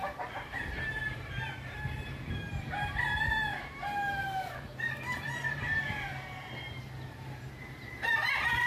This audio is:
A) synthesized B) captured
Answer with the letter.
A